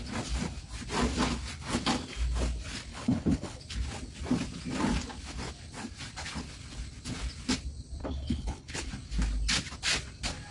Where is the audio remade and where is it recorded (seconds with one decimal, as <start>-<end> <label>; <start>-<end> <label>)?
0.0-2.9 recorded; 2.9-3.6 remade; 3.6-8.0 recorded; 8.0-8.9 remade; 8.9-10.5 recorded